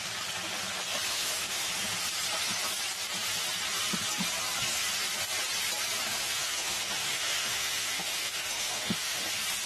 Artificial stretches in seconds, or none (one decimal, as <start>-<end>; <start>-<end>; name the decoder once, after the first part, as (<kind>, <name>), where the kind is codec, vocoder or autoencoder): 1.1-1.7 (autoencoder, DAC-VAE); 6.1-9.2